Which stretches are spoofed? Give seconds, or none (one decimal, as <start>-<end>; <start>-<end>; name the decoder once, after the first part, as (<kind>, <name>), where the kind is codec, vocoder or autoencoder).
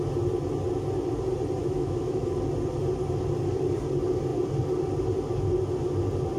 1.6-2.2 (autoencoder, DAC-VAE)